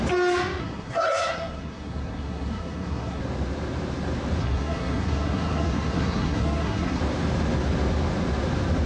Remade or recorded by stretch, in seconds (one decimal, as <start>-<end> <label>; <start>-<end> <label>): 0.0-0.6 recorded; 0.6-3.2 remade; 3.2-4.4 recorded; 4.4-7.0 remade; 7.0-8.9 recorded